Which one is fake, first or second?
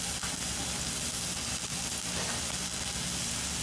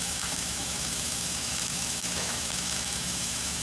second